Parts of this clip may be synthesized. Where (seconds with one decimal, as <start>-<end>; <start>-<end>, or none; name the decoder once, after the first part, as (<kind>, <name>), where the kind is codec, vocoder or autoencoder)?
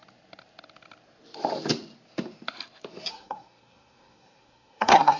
3.1-5.2 (codec, SNAC)